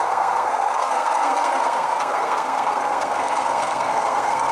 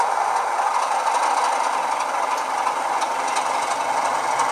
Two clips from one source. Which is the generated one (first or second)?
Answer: first